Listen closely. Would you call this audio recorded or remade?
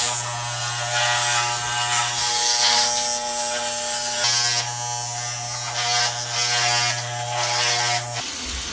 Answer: recorded